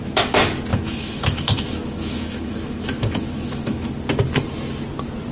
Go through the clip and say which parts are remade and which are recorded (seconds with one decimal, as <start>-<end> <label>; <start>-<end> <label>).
0.0-0.7 recorded; 0.7-3.9 remade; 3.9-5.3 recorded